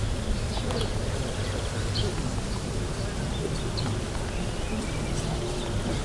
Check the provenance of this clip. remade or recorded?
recorded